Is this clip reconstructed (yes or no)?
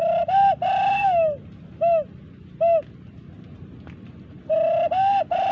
no